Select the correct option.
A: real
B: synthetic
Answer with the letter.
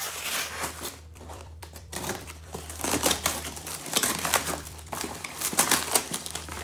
B